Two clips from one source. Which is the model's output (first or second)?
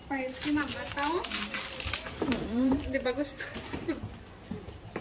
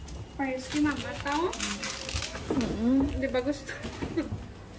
first